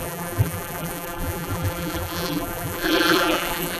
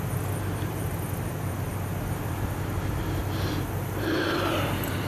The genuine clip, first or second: second